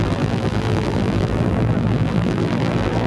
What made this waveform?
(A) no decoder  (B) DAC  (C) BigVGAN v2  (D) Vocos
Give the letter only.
C